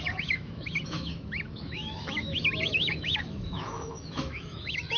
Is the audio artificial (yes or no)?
yes